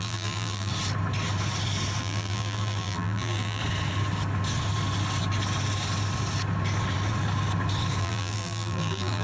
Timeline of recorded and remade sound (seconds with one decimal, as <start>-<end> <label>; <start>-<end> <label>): 0.0-0.7 remade; 0.7-2.0 recorded; 2.0-3.6 remade; 3.6-8.0 recorded; 8.0-9.2 remade